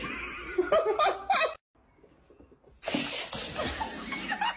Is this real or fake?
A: real